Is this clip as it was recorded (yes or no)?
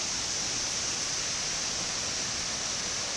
yes